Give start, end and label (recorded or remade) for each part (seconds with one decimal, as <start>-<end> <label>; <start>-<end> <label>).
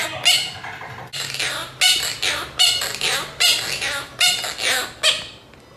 0.0-5.8 recorded